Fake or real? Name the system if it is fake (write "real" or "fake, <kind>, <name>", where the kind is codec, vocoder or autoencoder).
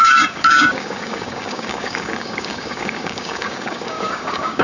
fake, codec, DAC